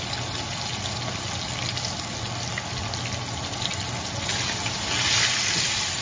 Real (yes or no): yes